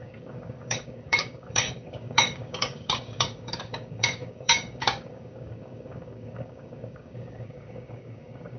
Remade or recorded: remade